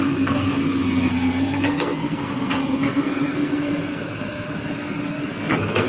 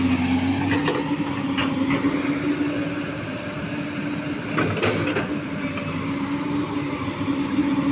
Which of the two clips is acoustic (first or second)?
second